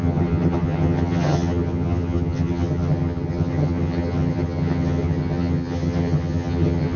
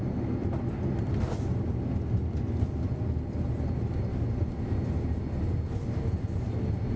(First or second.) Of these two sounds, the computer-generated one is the first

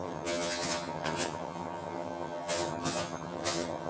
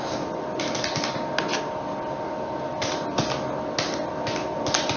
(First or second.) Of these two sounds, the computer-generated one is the first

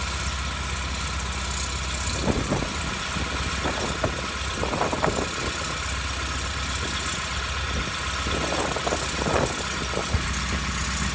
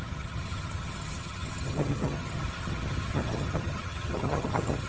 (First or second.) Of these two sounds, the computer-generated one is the second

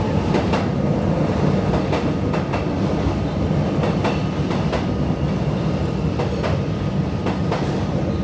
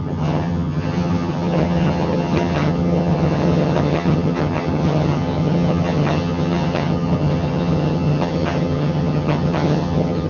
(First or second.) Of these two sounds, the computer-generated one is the second